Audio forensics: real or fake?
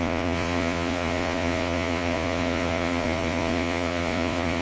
fake